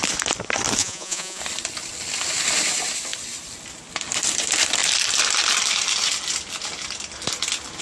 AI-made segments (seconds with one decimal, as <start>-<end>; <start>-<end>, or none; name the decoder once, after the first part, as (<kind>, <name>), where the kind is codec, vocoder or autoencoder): 0.8-1.4 (vocoder, Vocos)

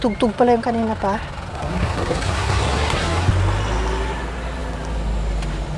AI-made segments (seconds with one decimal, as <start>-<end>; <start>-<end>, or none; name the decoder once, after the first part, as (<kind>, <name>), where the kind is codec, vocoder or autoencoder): 1.5-3.3 (codec, SNAC)

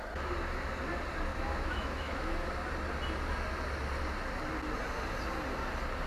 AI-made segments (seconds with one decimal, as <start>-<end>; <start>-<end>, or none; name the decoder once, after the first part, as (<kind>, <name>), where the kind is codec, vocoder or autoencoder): 1.3-2.5 (autoencoder, DAC-VAE)

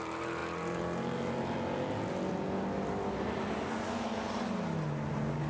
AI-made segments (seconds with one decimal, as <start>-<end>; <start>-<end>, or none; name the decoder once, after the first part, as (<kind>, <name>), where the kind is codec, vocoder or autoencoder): none

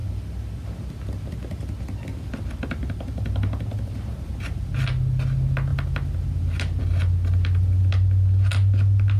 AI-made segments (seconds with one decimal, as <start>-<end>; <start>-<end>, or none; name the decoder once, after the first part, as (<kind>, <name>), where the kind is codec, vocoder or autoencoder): none

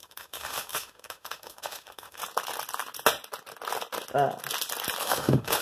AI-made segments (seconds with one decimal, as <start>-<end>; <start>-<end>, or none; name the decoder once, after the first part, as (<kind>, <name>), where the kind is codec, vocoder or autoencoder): 0.0-2.2 (autoencoder, DAC-VAE); 5.0-5.6